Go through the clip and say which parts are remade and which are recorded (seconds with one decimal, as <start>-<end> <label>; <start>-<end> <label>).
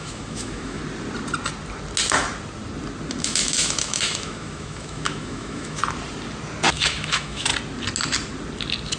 0.0-0.8 remade; 0.8-3.2 recorded; 3.2-5.8 remade; 5.8-6.7 recorded; 6.7-7.5 remade; 7.5-9.0 recorded